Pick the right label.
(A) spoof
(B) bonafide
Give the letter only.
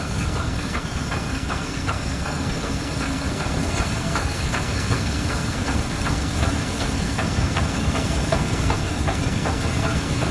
A